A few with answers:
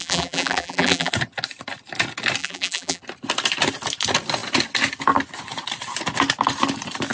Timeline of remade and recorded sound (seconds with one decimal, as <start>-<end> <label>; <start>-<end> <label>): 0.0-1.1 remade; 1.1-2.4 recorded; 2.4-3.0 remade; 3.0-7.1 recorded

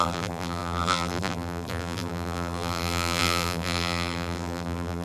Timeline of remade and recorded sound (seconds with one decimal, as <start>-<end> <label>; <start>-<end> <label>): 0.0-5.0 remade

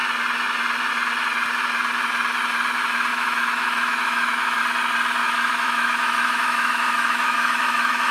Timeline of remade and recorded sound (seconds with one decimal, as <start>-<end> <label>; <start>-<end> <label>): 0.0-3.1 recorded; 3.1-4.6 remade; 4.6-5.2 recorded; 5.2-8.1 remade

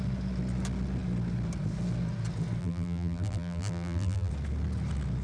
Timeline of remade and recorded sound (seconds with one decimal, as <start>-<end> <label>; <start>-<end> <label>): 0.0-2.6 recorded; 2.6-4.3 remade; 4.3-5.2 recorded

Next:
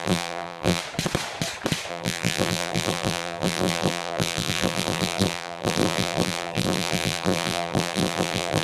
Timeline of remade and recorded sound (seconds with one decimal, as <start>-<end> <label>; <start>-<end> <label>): 0.0-0.8 remade; 0.8-1.9 recorded; 1.9-8.6 remade

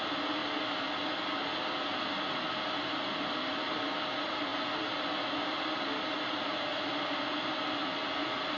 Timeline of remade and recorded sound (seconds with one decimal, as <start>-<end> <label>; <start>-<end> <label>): 0.0-8.6 recorded

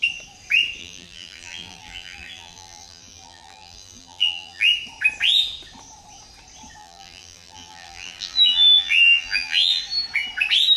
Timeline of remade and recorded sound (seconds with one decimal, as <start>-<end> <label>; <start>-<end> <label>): 0.0-0.8 recorded; 0.8-4.7 remade; 4.7-6.8 recorded; 6.8-9.8 remade; 9.8-10.8 recorded